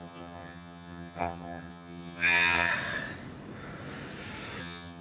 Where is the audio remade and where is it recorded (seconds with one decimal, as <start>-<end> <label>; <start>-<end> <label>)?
0.0-2.7 remade; 2.7-4.6 recorded; 4.6-5.0 remade